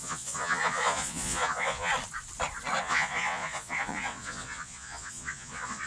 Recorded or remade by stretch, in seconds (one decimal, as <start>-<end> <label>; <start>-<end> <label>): 0.0-1.9 remade; 1.9-2.8 recorded; 2.8-5.9 remade